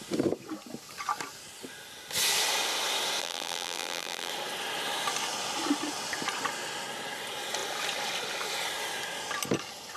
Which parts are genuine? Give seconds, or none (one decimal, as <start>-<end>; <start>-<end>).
0.0-3.2; 4.3-10.0